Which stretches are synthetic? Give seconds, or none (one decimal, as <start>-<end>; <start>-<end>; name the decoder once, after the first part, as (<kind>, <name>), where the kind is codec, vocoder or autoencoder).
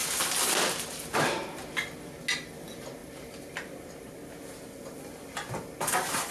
0.0-2.1 (vocoder, BigVGAN v2); 3.0-4.3